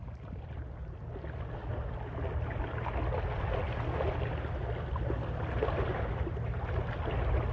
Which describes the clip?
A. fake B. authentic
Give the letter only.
B